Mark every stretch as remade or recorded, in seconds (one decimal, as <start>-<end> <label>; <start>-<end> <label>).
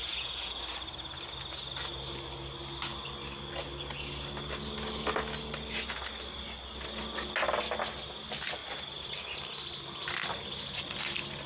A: 0.0-0.6 remade; 0.6-11.5 recorded